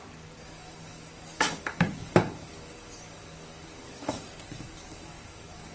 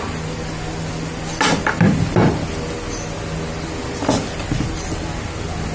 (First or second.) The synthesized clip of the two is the first